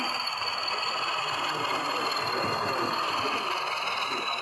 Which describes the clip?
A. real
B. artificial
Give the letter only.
A